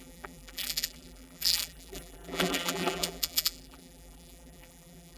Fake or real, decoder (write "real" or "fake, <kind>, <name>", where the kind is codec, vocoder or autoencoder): fake, vocoder, BigVGAN v2